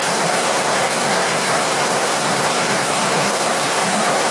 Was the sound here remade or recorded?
remade